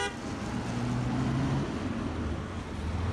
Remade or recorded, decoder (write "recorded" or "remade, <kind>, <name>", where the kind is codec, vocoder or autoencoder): recorded